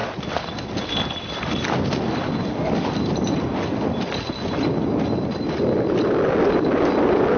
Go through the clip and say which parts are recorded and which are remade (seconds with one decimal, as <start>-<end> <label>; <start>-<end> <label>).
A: 0.0-7.4 recorded